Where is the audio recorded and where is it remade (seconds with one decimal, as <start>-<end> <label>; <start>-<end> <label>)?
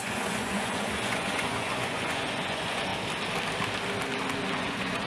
0.0-2.9 remade; 2.9-4.5 recorded; 4.5-5.1 remade